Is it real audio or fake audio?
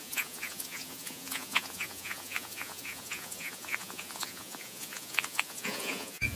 fake